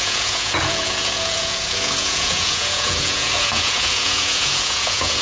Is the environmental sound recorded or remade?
remade